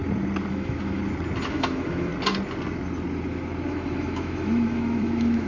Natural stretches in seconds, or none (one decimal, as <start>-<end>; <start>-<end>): 0.0-0.5; 1.0-1.5; 2.1-3.7